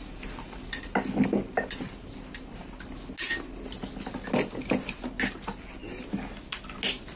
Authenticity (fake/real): real